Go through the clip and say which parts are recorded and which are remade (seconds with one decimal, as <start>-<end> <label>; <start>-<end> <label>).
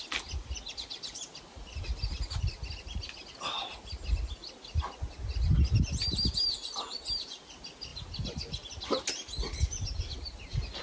0.0-10.8 recorded